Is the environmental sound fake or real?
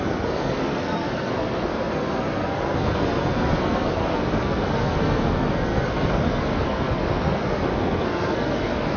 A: fake